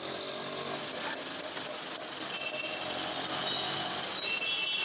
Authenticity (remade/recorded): recorded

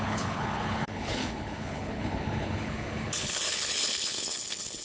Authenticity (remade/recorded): remade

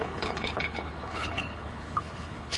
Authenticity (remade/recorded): remade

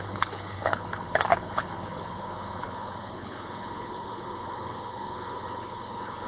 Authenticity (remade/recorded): remade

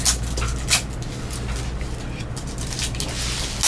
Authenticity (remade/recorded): recorded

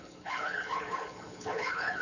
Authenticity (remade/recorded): remade